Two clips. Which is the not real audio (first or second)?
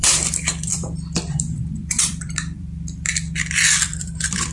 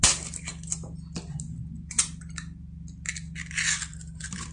first